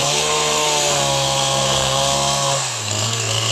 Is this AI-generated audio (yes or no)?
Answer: yes